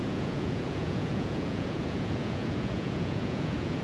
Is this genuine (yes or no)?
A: no